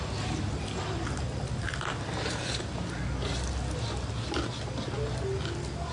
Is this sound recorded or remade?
recorded